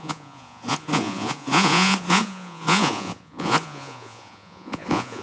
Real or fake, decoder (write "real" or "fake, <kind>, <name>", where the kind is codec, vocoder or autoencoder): fake, vocoder, Vocos